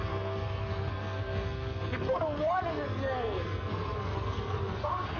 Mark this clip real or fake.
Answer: fake